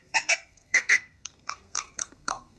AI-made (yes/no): yes